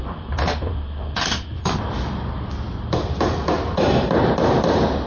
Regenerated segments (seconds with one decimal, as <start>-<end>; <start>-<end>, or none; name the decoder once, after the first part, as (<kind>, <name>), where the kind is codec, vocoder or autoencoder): 0.0-5.1 (vocoder, BigVGAN v2)